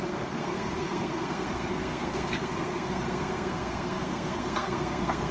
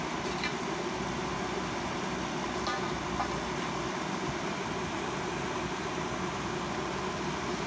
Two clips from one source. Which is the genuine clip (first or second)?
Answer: second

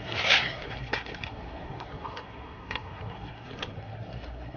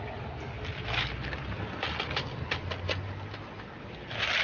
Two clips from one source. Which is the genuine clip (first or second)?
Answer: second